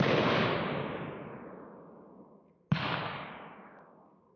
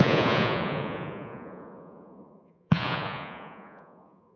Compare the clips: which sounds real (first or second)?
first